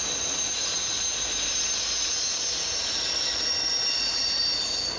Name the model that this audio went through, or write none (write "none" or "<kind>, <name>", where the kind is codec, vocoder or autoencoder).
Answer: none